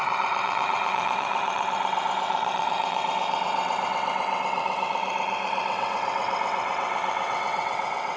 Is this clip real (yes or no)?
no